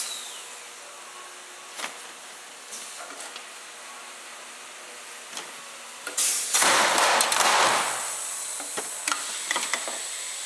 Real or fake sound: real